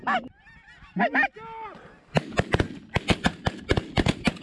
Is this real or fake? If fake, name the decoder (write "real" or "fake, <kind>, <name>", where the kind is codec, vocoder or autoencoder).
real